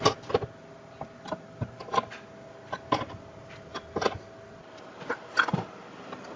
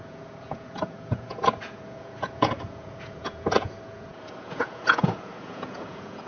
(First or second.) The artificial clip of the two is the second